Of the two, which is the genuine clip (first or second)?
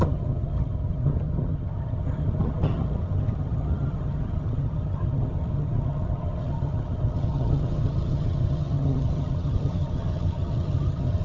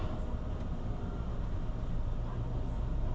second